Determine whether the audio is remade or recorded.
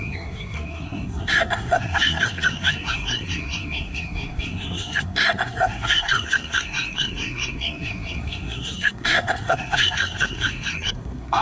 remade